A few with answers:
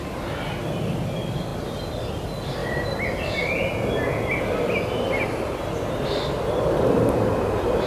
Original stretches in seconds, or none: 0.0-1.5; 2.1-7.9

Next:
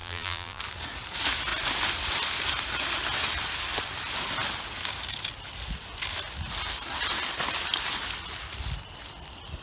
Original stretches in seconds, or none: 0.6-9.6

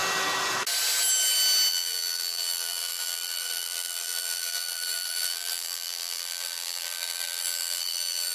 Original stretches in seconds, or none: 0.0-1.7

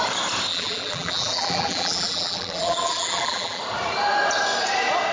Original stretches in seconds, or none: 0.0-0.5; 3.6-5.1